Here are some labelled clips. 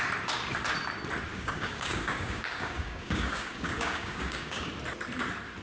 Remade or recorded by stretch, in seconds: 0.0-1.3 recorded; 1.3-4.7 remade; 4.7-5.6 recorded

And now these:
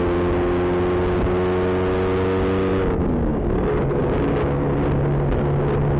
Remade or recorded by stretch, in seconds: 0.0-2.7 recorded; 2.7-4.6 remade; 4.6-6.0 recorded

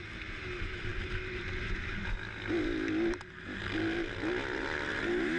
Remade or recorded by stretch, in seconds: 0.0-5.4 recorded